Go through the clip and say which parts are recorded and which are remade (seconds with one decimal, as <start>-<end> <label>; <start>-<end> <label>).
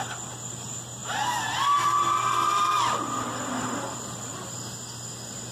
0.0-1.0 recorded; 1.0-4.3 remade; 4.3-5.5 recorded